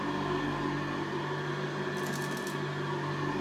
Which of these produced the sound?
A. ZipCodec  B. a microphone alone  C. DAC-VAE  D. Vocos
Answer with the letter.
B